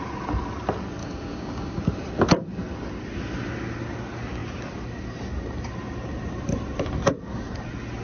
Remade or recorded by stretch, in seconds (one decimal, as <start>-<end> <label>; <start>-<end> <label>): 0.0-1.0 recorded; 1.0-1.8 remade; 1.8-8.0 recorded